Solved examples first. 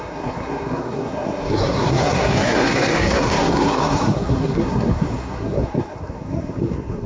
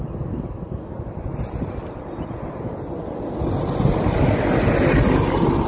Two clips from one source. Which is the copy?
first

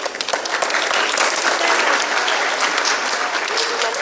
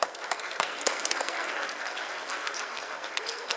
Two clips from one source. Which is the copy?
second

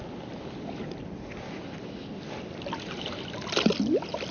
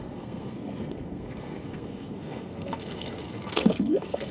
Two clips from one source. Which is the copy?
second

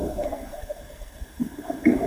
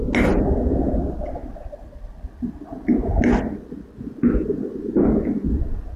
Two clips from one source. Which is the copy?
first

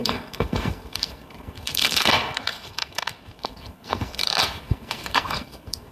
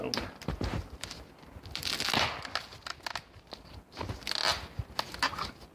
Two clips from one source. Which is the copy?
first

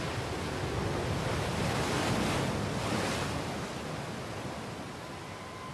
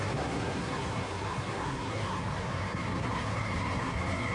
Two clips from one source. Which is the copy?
second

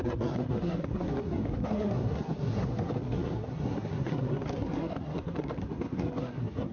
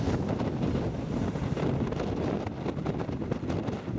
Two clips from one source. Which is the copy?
first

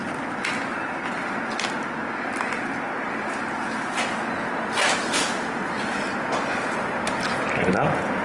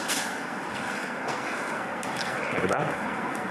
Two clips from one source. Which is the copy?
second